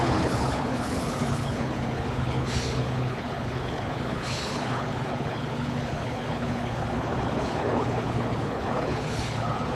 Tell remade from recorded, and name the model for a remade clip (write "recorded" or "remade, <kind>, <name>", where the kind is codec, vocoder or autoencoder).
remade, codec, HILCodec